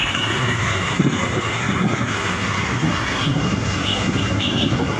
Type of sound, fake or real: fake